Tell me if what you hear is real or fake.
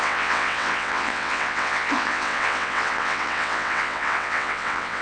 fake